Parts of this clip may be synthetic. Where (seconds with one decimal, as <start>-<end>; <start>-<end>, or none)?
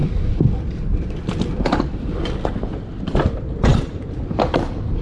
3.0-5.0